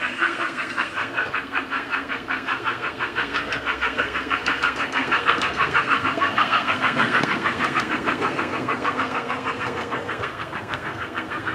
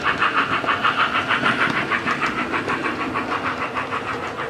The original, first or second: second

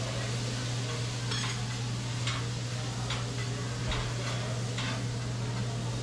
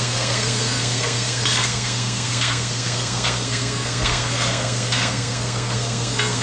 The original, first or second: first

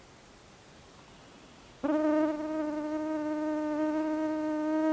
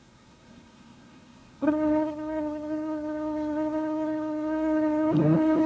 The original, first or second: first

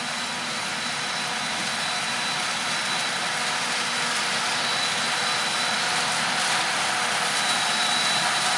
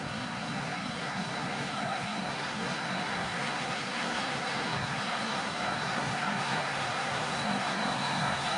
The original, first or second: first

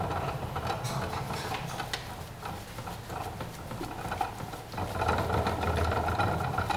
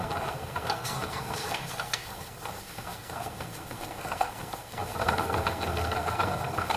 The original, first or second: first